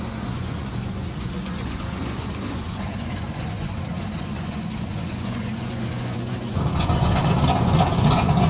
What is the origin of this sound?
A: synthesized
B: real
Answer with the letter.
A